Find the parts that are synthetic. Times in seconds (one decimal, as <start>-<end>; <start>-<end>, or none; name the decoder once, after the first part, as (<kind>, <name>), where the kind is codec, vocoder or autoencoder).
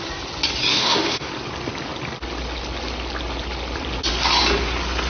0.7-1.3 (autoencoder, DAC-VAE)